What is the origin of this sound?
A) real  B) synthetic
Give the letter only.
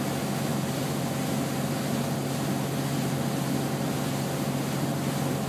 A